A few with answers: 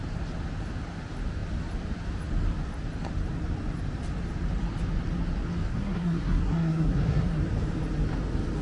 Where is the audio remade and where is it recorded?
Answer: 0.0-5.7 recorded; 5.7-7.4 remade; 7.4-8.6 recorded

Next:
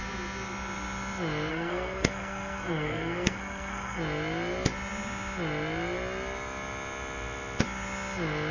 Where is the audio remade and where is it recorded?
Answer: 0.0-1.5 recorded; 1.5-4.0 remade; 4.0-8.5 recorded